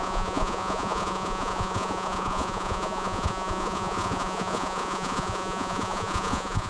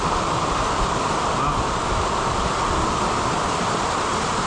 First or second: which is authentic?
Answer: second